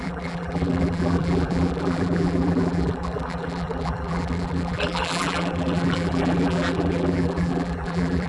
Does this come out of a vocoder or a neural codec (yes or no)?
yes